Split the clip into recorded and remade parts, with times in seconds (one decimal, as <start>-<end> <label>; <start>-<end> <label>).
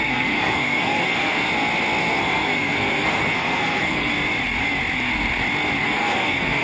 0.0-1.4 remade; 1.4-2.0 recorded; 2.0-4.1 remade; 4.1-5.8 recorded; 5.8-6.6 remade